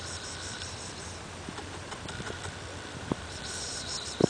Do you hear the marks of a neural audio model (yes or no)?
no